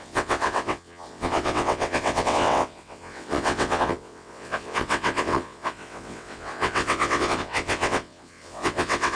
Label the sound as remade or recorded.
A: remade